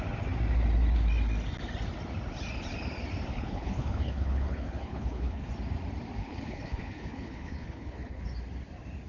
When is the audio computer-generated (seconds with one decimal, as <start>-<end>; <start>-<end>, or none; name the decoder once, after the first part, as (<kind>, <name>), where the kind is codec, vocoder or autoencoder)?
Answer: 3.3-5.5 (codec, HILCodec); 6.2-8.2